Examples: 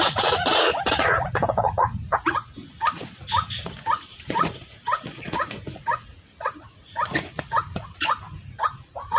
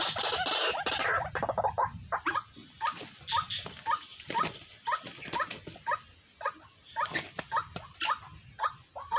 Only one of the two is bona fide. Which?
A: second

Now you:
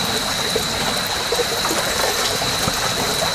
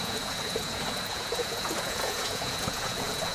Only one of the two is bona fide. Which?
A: first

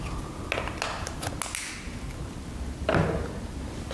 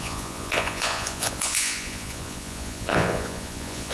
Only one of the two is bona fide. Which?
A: first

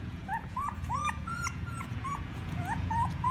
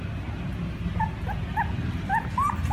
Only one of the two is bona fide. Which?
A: second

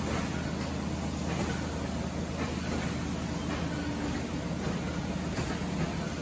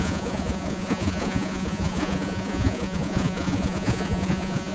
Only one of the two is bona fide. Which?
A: first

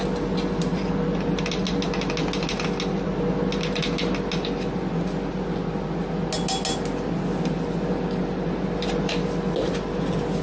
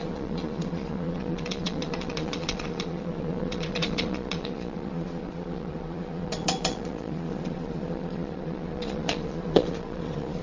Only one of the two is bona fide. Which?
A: first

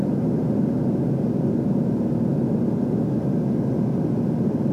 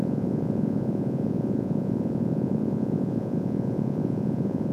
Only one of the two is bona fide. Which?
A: first